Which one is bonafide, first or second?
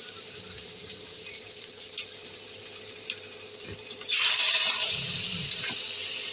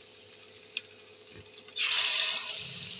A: second